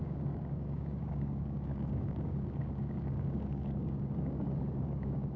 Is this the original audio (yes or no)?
no